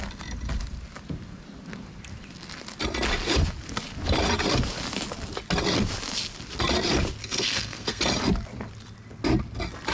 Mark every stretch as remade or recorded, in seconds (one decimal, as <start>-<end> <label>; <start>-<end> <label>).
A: 0.0-7.2 recorded; 7.2-8.0 remade; 8.0-9.9 recorded